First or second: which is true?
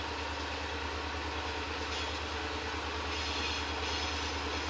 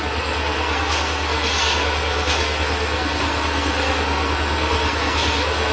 first